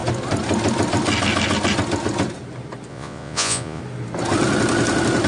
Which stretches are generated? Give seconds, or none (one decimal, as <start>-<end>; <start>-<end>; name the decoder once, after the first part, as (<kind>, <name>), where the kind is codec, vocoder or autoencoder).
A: 2.9-3.8 (vocoder, Vocos)